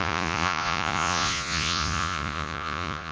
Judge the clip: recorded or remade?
remade